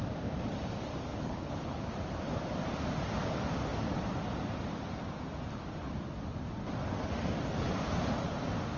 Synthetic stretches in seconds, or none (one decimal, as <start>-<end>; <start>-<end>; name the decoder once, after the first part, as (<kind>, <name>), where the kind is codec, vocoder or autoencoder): 1.1-1.8 (codec, HILCodec)